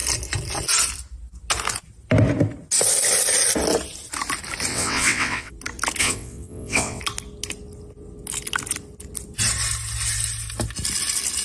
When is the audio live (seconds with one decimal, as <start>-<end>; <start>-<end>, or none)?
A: 0.0-4.7; 5.5-6.0; 7.0-11.4